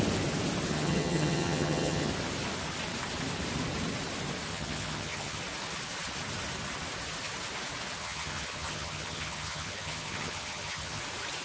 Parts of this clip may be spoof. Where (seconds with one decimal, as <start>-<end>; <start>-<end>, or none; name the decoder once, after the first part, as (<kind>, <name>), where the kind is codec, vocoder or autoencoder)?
0.7-2.1 (vocoder, HiFi-GAN); 4.5-5.4; 8.0-11.0